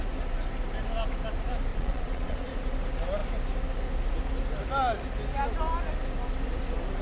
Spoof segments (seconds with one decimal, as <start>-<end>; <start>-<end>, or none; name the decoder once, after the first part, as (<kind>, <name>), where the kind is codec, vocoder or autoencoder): 1.7-2.6 (vocoder, Vocos)